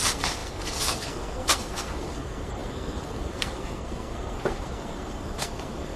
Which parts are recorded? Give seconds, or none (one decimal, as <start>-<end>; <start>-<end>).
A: none